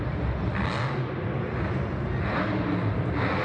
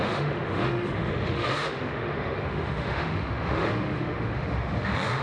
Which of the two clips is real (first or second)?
first